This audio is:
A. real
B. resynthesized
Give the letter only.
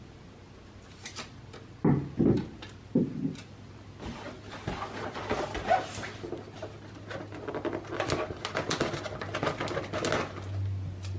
A